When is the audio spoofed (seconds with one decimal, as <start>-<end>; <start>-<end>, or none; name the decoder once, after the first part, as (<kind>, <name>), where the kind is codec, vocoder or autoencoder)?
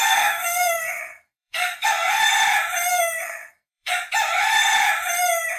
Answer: 0.0-2.2 (codec, SNAC); 2.9-3.9